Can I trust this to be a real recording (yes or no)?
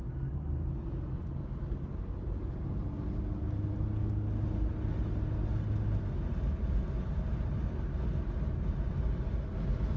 yes